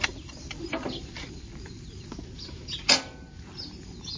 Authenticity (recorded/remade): recorded